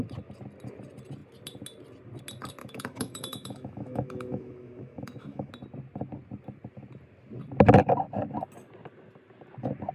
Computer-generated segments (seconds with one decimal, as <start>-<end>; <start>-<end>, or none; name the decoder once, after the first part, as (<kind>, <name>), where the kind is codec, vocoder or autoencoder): 2.6-5.5 (autoencoder, DAC-VAE)